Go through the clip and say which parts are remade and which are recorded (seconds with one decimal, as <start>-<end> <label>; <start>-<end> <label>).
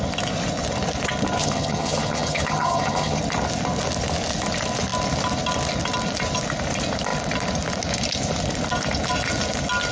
0.0-1.4 recorded; 1.4-3.2 remade; 3.2-9.9 recorded